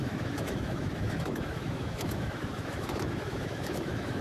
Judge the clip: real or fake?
fake